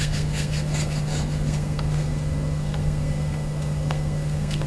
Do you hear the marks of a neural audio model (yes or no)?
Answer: yes